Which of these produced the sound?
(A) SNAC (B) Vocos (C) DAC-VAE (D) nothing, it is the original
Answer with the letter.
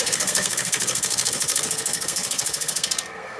A